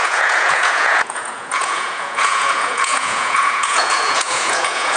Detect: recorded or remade remade